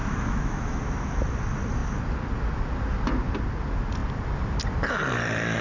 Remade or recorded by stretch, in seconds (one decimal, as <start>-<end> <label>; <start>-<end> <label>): 0.0-0.8 remade; 0.8-5.6 recorded